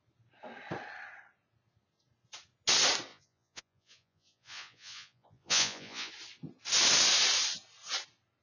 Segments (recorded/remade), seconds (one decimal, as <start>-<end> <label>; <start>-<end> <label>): 0.0-3.1 recorded; 3.1-6.1 remade; 6.1-8.4 recorded